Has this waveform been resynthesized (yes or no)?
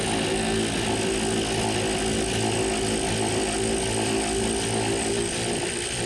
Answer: no